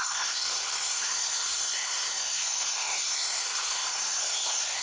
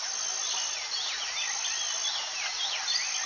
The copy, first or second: first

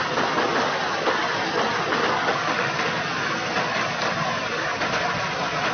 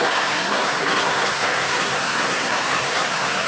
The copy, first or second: second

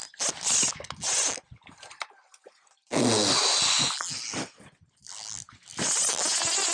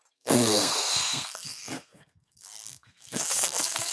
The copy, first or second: second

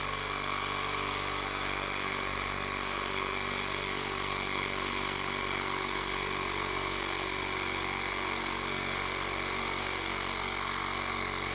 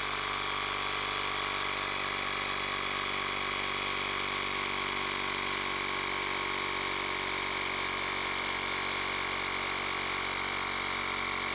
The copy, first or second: first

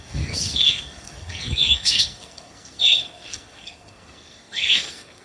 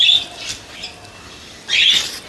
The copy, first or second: first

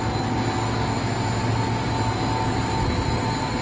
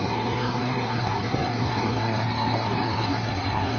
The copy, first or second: second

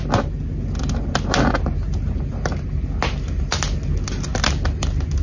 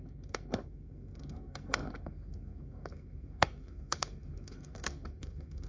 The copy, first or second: second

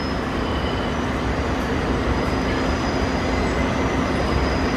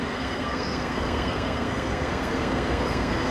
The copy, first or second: second